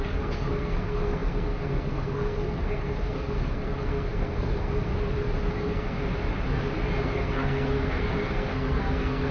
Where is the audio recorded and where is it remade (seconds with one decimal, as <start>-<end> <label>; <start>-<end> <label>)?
0.0-4.9 remade; 4.9-5.5 recorded; 5.5-6.0 remade; 6.0-7.0 recorded; 7.0-9.3 remade